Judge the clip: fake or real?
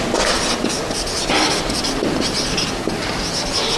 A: real